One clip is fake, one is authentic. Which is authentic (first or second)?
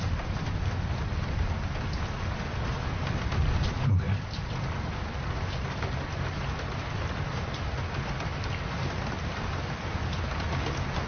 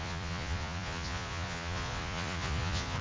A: first